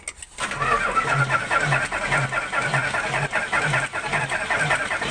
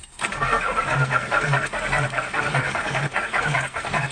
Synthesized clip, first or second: second